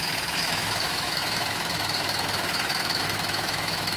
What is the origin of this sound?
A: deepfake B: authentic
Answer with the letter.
A